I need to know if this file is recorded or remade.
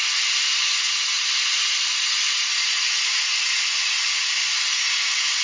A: recorded